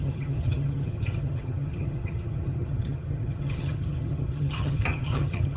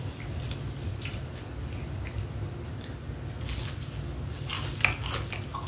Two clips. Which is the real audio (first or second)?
second